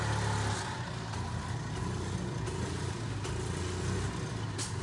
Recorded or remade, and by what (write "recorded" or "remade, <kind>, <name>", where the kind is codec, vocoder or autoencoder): recorded